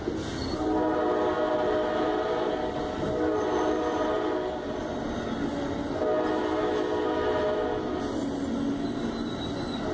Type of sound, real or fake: real